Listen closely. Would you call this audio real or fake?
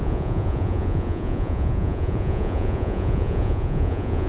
fake